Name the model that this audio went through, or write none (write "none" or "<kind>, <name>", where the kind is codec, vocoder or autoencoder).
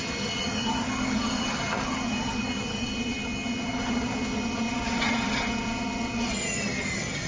vocoder, HiFi-GAN